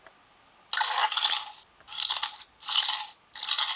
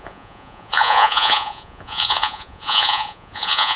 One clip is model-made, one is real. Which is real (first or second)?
first